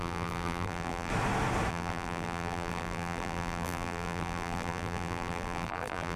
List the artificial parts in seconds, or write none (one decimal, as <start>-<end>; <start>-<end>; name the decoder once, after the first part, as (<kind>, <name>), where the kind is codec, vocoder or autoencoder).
0.0-1.1 (vocoder, BigVGAN v2); 1.7-6.2